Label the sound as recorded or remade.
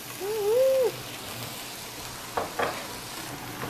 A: recorded